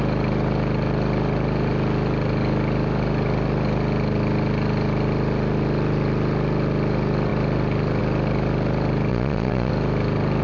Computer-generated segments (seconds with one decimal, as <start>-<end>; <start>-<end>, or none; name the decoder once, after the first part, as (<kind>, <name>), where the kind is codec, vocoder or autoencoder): 9.1-9.7 (vocoder, Vocos)

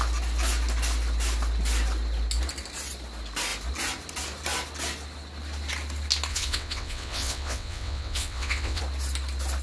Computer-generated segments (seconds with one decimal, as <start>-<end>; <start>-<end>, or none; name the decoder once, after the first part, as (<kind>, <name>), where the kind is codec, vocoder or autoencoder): 6.3-8.8 (vocoder, WaveNeXt)

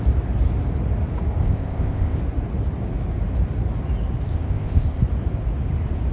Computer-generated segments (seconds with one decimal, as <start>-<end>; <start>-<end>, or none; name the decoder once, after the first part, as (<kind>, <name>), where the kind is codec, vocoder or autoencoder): 1.4-2.2 (codec, ZipCodec); 4.3-5.0

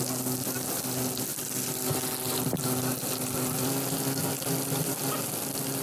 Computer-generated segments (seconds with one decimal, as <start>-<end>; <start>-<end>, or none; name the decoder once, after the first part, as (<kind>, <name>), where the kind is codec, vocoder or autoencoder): none

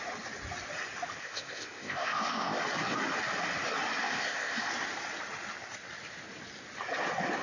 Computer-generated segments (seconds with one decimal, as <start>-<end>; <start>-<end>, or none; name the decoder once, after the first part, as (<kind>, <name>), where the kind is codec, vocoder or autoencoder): 1.2-2.6 (codec, ZipCodec); 4.0-4.7

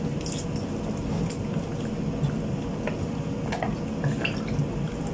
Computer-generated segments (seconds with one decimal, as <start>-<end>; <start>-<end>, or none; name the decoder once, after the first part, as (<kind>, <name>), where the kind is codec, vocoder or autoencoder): none